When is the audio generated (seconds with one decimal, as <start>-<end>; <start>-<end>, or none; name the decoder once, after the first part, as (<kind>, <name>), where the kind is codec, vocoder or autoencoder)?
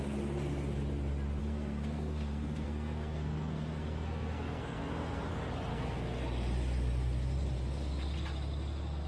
1.4-5.2 (codec, SNAC); 5.7-6.2